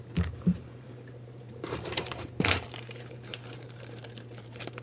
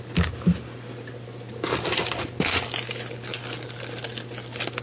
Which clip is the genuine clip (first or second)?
second